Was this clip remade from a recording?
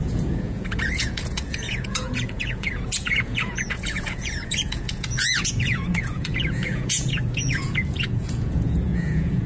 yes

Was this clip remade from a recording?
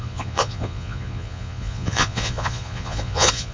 yes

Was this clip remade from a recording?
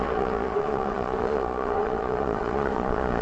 yes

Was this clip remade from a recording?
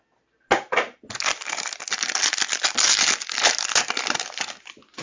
no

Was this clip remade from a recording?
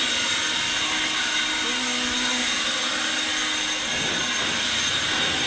no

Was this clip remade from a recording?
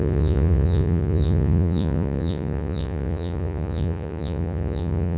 yes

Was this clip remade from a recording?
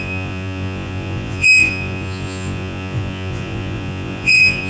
yes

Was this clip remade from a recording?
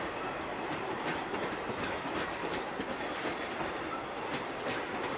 no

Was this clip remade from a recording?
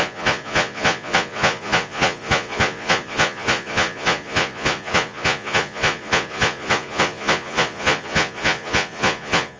yes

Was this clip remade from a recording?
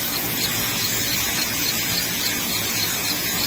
yes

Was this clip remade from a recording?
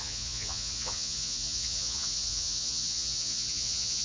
yes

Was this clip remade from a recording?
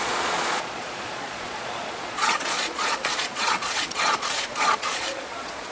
yes